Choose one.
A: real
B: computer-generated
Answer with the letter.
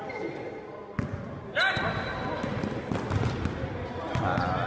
A